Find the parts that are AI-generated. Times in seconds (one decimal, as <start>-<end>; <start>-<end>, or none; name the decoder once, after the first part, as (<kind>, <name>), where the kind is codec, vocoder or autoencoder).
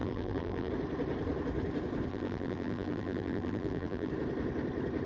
0.0-0.7 (vocoder, BigVGAN v2); 2.1-4.1